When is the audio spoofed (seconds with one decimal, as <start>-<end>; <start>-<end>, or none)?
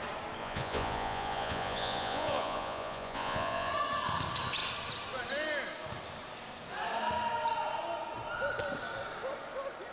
0.4-3.7